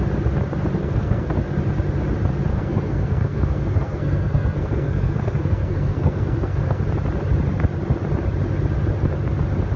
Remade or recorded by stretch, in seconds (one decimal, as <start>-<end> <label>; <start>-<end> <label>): 0.0-0.8 recorded; 0.8-1.3 remade; 1.3-2.5 recorded; 2.5-6.8 remade; 6.8-9.8 recorded